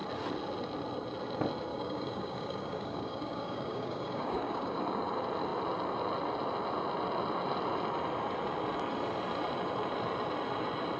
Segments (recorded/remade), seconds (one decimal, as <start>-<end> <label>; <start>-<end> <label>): 0.0-1.7 recorded; 1.7-4.8 remade; 4.8-11.0 recorded